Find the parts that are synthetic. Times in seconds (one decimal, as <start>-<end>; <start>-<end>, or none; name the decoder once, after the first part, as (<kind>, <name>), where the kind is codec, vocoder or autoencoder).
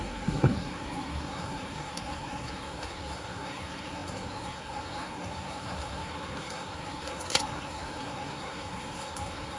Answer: 0.0-9.6 (codec, SNAC)